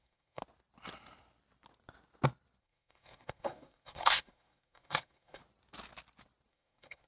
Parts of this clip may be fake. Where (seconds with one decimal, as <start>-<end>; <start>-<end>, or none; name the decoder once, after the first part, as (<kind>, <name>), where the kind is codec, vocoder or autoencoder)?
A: 0.0-0.4 (codec, SNAC); 2.6-5.4; 6.5-7.1